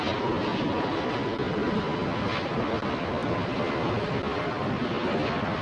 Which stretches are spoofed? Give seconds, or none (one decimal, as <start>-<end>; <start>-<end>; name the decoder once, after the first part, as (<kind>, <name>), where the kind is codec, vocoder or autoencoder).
none